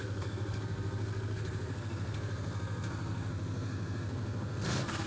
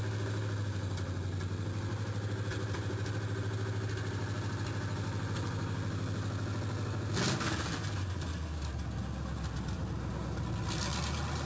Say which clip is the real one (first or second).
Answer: second